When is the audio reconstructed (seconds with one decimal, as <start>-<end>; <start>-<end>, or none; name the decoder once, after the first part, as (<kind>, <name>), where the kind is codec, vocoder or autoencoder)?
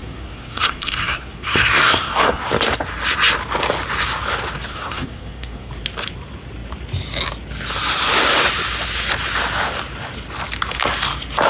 0.0-2.4 (codec, SNAC); 4.7-5.7